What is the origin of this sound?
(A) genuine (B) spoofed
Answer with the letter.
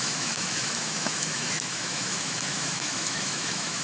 B